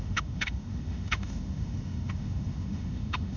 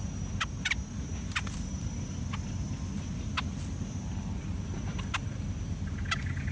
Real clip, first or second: second